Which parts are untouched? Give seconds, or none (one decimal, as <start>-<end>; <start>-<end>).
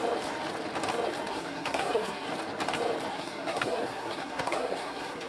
0.0-1.3; 2.3-3.1